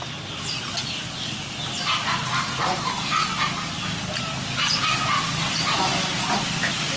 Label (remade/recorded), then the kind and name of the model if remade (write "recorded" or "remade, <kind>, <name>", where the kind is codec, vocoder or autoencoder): recorded